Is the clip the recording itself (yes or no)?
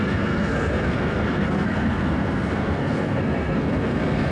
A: no